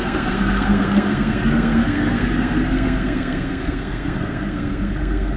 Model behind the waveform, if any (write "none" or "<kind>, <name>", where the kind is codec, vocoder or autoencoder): codec, SNAC